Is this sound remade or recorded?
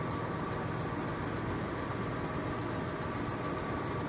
recorded